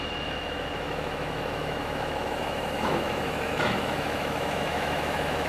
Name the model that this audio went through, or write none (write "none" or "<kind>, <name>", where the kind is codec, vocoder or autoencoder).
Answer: autoencoder, DAC-VAE